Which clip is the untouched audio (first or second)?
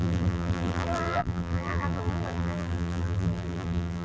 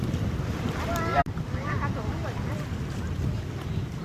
second